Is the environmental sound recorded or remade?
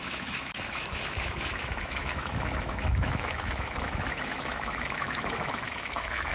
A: remade